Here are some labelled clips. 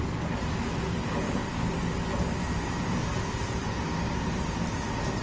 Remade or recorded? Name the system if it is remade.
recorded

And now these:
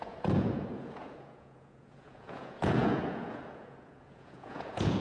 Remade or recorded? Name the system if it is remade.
remade, vocoder, Vocos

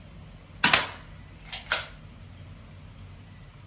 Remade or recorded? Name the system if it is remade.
recorded